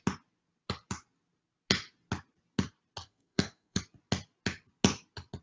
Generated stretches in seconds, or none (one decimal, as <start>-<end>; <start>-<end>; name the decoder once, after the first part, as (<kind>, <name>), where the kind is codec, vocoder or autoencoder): 3.0-3.8 (codec, SNAC)